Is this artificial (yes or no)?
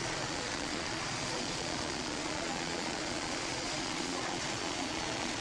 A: yes